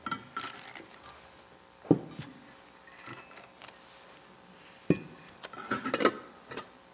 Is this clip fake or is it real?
real